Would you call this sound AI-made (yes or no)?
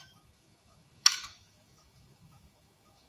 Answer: yes